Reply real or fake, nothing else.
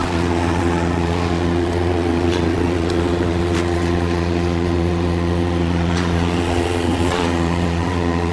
fake